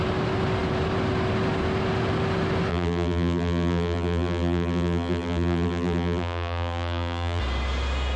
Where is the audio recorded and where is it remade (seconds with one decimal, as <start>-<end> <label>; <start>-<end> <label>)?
0.0-2.7 recorded; 2.7-7.4 remade; 7.4-8.2 recorded